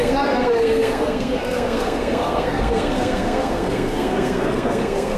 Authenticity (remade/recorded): remade